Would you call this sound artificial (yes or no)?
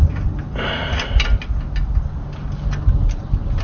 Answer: no